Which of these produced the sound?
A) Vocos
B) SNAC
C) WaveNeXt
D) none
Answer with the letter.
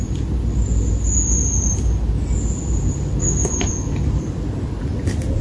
D